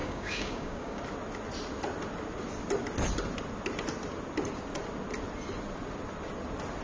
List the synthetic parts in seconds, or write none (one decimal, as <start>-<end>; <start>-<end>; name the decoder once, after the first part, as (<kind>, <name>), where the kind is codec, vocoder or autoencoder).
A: 0.0-1.0 (codec, DAC)